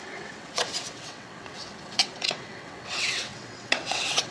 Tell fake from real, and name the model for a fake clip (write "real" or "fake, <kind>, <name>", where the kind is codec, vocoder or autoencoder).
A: fake, vocoder, WaveNeXt